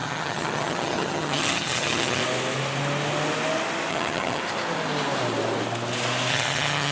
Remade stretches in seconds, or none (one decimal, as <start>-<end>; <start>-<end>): 0.0-2.2; 3.9-4.4; 6.3-6.9